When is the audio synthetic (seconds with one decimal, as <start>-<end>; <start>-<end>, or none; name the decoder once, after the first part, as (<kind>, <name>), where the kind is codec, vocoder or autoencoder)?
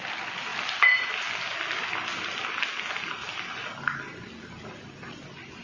none